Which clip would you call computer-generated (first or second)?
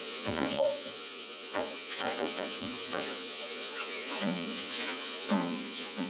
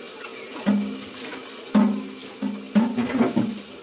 first